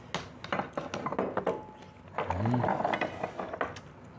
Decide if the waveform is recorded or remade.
recorded